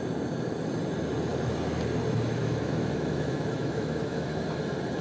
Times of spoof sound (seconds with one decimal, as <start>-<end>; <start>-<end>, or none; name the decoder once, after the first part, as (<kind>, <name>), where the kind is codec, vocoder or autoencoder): 2.4-4.6 (autoencoder, DAC-VAE)